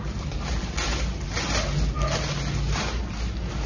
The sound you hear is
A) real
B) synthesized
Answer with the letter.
A